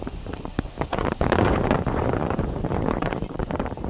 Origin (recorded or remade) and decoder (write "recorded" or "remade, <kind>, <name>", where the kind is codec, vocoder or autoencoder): remade, vocoder, Vocos